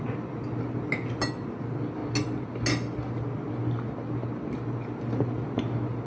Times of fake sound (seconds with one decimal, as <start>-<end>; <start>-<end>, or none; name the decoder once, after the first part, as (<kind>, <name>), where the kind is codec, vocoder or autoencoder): none